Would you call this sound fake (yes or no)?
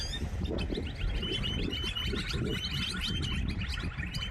no